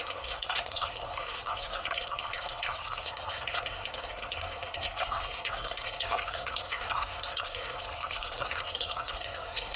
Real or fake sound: fake